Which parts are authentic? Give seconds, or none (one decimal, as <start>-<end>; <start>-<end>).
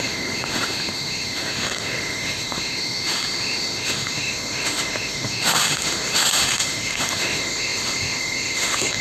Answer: none